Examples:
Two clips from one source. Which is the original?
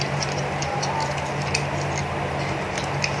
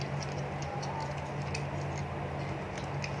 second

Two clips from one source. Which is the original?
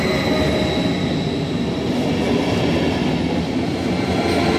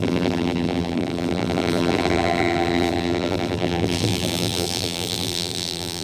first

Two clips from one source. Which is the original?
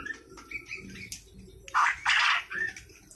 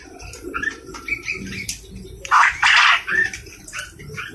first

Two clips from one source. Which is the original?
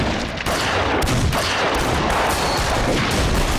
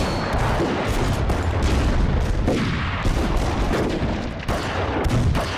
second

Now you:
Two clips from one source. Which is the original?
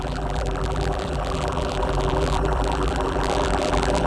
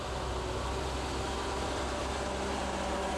second